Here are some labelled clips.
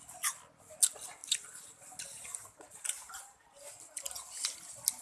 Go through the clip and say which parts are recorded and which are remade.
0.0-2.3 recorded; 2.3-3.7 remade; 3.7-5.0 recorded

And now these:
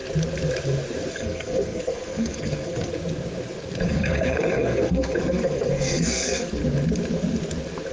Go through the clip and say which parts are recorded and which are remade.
0.0-1.1 recorded; 1.1-2.9 remade; 2.9-3.9 recorded; 3.9-6.6 remade; 6.6-7.9 recorded

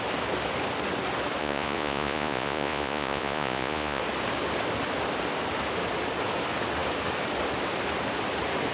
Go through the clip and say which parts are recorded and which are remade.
0.0-1.4 recorded; 1.4-4.0 remade; 4.0-8.7 recorded

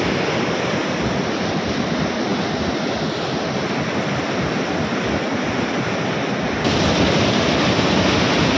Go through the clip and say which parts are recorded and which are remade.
0.0-8.6 recorded

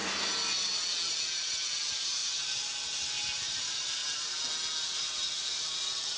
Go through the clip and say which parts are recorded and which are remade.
0.0-1.7 recorded; 1.7-4.0 remade; 4.0-4.8 recorded; 4.8-6.2 remade

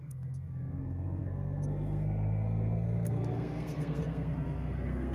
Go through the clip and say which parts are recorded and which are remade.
0.0-5.1 remade

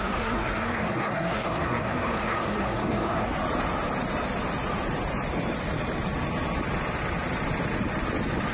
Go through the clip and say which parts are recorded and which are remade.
0.0-3.3 remade; 3.3-8.5 recorded